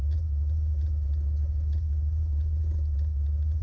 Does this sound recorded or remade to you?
recorded